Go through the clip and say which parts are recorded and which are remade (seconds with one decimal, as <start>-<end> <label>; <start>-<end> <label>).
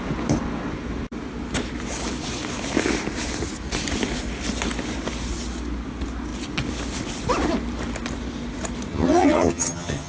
0.0-8.9 recorded; 8.9-10.1 remade